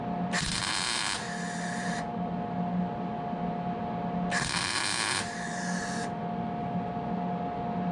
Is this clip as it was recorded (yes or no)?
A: yes